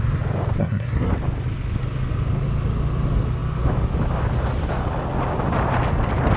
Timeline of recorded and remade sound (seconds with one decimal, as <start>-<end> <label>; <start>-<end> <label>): 0.0-0.6 recorded; 0.6-1.1 remade; 1.1-6.4 recorded